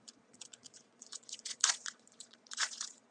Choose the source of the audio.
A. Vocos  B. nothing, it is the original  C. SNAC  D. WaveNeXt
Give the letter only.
A